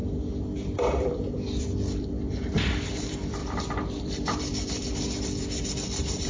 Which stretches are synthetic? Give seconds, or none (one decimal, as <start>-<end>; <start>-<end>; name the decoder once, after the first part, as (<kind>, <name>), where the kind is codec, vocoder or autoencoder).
1.6-6.3 (vocoder, BigVGAN v2)